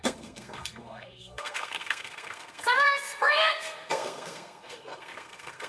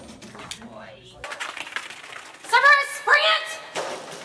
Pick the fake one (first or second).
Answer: first